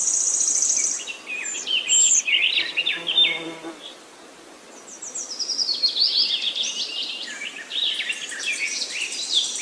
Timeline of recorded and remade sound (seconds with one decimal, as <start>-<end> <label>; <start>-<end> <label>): 0.0-5.1 recorded; 5.1-9.6 remade